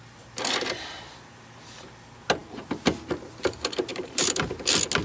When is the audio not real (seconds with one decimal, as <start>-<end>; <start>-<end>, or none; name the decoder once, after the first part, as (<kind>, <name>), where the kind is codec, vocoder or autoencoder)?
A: 3.9-4.5 (vocoder, BigVGAN v2)